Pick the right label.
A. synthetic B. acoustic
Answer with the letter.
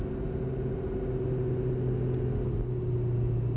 B